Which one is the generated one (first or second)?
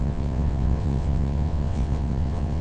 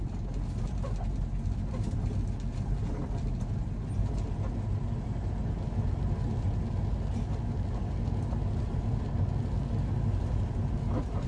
first